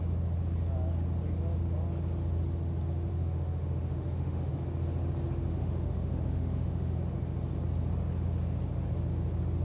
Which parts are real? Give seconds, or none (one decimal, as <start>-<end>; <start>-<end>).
0.0-3.1; 4.5-5.5; 7.0-9.6